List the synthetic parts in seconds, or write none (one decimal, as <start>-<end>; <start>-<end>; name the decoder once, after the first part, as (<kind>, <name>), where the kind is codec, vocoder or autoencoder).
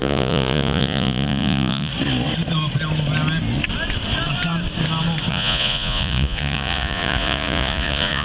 0.0-1.9 (vocoder, Vocos); 5.3-8.2